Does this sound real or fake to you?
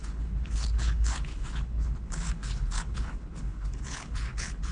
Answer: fake